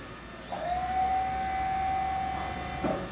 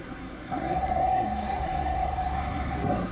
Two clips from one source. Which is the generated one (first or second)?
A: second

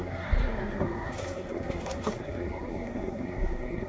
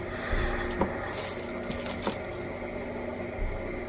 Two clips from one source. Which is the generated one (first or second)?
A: first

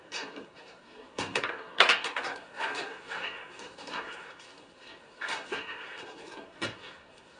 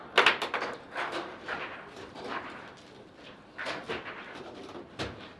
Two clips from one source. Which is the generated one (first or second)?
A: first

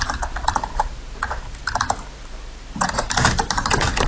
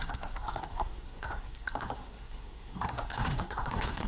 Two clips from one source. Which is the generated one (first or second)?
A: second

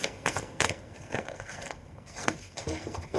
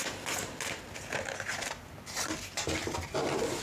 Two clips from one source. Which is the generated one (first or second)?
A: first